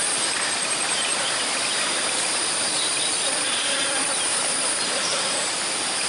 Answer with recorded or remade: remade